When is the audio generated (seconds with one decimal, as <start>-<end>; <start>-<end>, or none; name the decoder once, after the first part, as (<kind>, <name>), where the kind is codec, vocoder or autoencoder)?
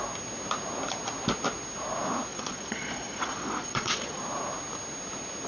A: 2.3-4.2 (vocoder, Vocos)